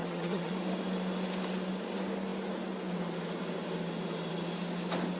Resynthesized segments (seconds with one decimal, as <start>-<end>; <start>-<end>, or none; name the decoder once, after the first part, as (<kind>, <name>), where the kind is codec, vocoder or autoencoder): 0.0-0.5 (vocoder, HiFi-GAN)